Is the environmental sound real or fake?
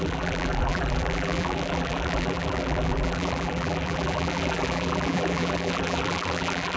fake